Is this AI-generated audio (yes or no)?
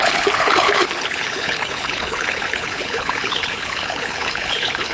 yes